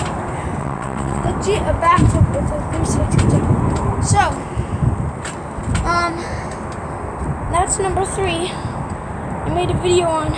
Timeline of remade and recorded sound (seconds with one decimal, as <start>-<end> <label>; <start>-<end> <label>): 0.0-0.6 recorded; 0.6-1.3 remade; 1.3-10.4 recorded